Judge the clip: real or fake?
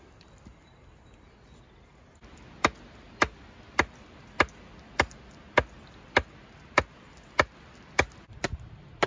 real